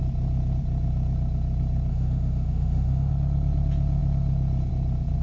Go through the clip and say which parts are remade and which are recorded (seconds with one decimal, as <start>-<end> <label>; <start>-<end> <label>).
0.0-1.9 recorded; 1.9-3.1 remade; 3.1-5.2 recorded